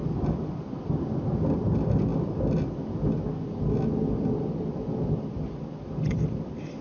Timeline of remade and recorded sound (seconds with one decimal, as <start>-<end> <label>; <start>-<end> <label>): 0.0-6.8 recorded